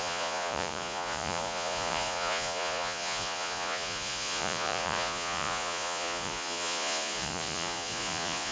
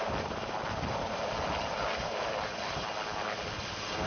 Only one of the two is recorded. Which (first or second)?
second